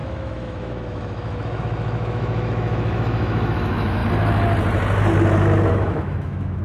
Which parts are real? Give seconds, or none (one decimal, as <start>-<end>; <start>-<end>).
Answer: 4.0-5.7

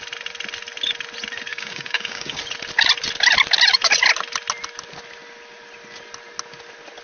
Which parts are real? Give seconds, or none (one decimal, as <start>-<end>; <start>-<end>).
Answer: 0.0-1.5; 2.4-7.0

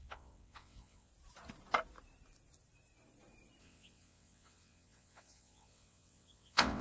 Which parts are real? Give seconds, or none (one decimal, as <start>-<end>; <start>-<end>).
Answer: 1.1-3.6

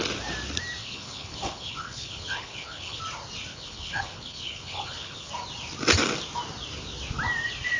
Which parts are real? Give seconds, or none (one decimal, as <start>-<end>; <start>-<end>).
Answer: 0.0-0.8; 3.0-3.5; 5.3-7.8